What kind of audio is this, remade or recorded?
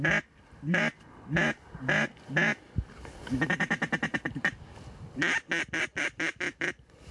recorded